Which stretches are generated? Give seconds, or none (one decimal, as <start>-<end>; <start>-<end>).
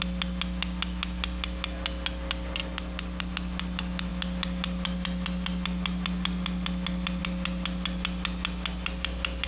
none